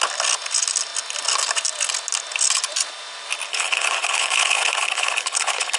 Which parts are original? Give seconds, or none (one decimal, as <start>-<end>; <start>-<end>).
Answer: 0.0-3.5